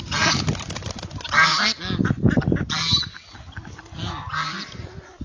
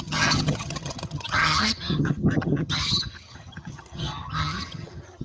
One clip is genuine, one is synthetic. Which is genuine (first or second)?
first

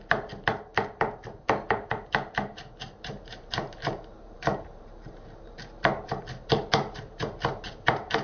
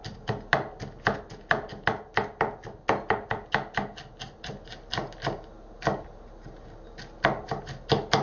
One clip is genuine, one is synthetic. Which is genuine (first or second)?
second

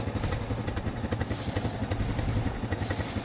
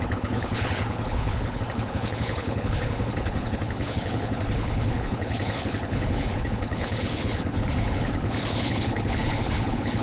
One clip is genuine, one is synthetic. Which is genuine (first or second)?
first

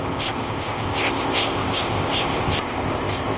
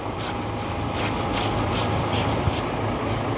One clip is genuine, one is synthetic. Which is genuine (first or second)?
second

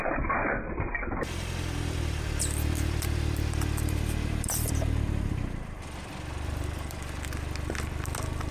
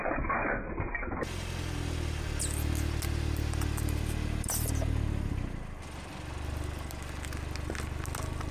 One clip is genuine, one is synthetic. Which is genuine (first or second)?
second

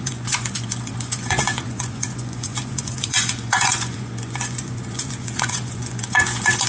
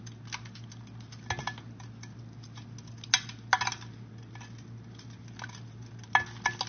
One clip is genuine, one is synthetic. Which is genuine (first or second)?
second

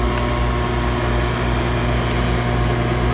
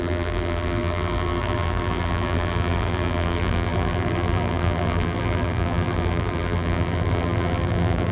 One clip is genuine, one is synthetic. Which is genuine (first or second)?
first